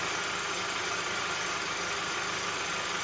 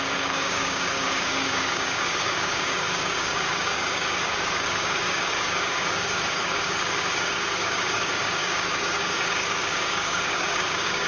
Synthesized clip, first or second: second